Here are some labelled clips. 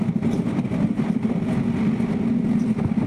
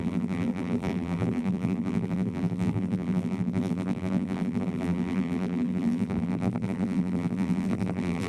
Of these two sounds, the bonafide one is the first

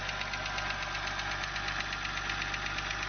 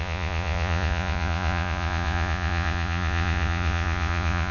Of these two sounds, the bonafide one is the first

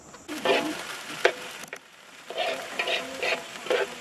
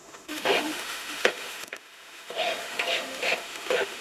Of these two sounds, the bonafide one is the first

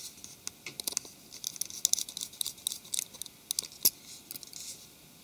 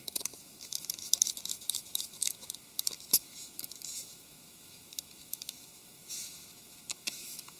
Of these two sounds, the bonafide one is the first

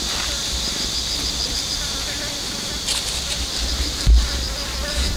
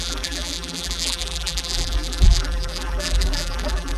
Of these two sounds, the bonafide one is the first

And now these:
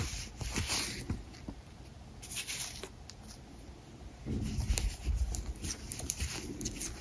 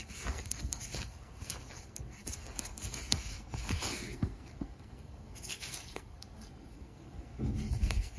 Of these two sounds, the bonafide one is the first